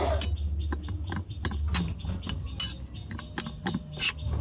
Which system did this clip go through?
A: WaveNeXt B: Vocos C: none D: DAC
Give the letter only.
C